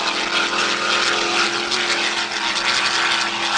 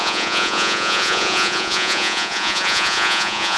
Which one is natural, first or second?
first